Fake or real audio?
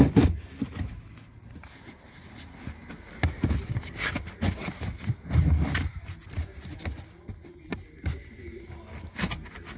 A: real